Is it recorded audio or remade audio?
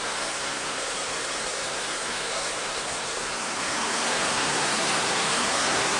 remade